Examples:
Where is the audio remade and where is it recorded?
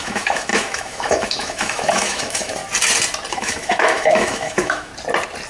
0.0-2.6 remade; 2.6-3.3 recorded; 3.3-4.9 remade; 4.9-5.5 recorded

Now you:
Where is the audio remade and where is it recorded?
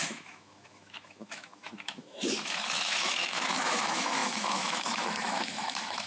0.0-6.1 remade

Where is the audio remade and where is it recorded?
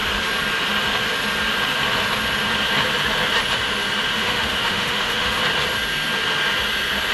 0.0-4.1 recorded; 4.1-5.4 remade; 5.4-7.1 recorded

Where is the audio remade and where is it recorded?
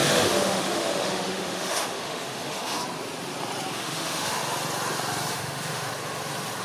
0.0-2.8 remade; 2.8-3.7 recorded; 3.7-4.4 remade; 4.4-5.3 recorded; 5.3-5.9 remade; 5.9-6.6 recorded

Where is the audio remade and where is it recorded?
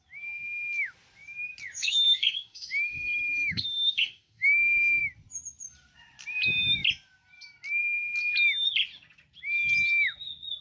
0.0-1.8 recorded; 1.8-5.0 remade; 5.0-10.6 recorded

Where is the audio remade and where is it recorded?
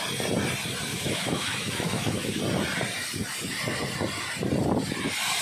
0.0-0.9 recorded; 0.9-2.4 remade; 2.4-5.4 recorded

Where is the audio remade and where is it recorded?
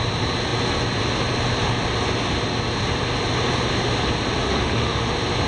0.0-4.4 recorded; 4.4-5.1 remade; 5.1-5.5 recorded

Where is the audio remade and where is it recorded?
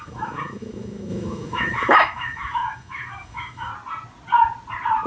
0.0-3.7 remade; 3.7-5.1 recorded